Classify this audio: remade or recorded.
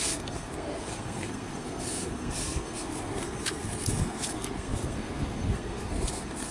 remade